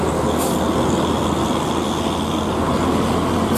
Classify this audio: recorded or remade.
recorded